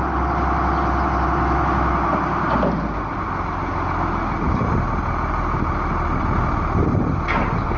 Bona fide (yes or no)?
yes